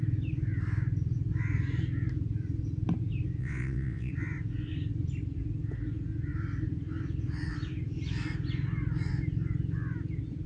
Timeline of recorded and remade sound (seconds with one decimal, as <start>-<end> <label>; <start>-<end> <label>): 0.0-3.4 recorded; 3.4-4.1 remade; 4.1-10.5 recorded